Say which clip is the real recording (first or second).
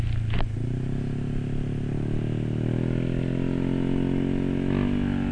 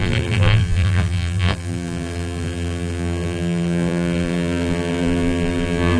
first